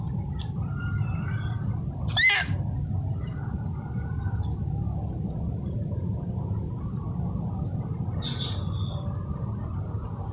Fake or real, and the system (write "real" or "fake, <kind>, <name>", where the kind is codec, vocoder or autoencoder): real